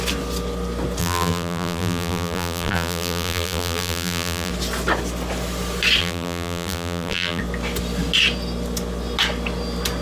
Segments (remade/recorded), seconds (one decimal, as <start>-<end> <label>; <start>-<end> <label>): 0.0-1.0 recorded; 1.0-4.5 remade; 4.5-6.0 recorded; 6.0-7.4 remade; 7.4-10.0 recorded

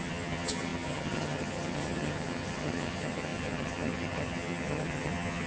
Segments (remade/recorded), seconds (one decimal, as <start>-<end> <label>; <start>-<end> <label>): 0.0-5.5 remade

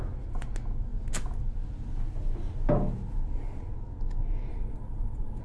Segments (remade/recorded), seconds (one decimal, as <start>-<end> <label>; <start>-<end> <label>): 0.0-4.5 recorded; 4.5-5.4 remade

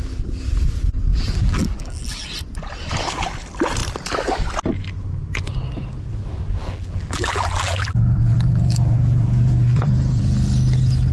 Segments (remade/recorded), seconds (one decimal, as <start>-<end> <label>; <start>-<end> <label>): 0.0-1.1 recorded; 1.1-2.3 remade; 2.3-6.6 recorded; 6.6-10.2 remade; 10.2-11.1 recorded

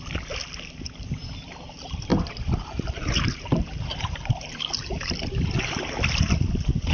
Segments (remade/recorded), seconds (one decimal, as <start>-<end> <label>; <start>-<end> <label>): 0.0-2.1 recorded; 2.1-4.5 remade; 4.5-6.9 recorded

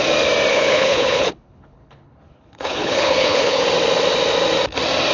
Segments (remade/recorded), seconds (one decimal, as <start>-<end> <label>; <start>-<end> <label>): 0.0-0.5 recorded; 0.5-3.6 remade; 3.6-5.1 recorded

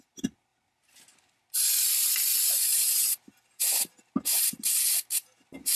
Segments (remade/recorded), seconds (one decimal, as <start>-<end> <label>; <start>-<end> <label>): 0.0-5.8 recorded